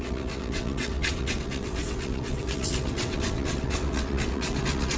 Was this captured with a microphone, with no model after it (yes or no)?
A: no